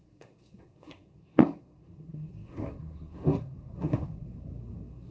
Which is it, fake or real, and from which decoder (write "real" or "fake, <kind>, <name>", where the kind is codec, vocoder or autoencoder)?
fake, codec, SNAC